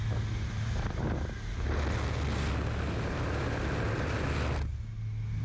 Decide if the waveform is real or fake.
real